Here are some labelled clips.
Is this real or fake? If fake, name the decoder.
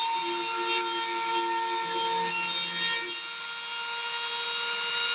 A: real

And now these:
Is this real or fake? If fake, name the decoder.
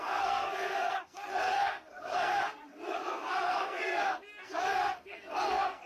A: fake, codec, SNAC